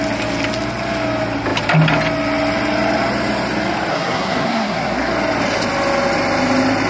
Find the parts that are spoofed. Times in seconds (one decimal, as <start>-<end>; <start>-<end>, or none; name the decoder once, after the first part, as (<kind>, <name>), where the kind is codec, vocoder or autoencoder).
3.9-5.1 (codec, SNAC)